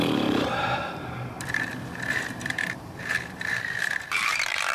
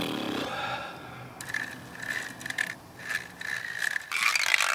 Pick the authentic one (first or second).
second